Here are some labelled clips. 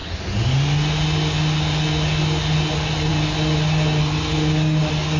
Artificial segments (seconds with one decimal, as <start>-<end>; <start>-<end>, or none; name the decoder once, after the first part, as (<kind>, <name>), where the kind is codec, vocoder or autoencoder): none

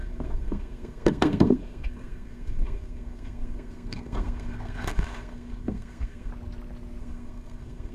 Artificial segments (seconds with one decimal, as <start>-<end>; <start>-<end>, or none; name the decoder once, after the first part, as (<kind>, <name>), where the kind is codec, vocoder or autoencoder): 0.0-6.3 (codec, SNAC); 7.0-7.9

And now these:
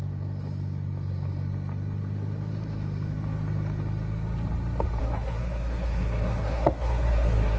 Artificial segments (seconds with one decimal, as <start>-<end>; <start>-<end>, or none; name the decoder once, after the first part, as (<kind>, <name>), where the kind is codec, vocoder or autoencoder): 5.0-7.6 (codec, SNAC)